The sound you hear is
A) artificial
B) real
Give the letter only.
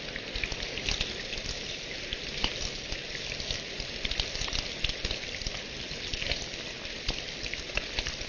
B